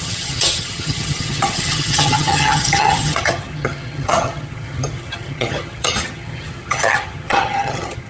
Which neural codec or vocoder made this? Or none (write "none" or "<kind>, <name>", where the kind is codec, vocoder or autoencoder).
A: vocoder, HiFi-GAN